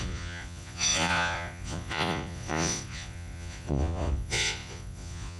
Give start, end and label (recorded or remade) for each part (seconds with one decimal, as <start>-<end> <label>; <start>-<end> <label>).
0.0-5.4 remade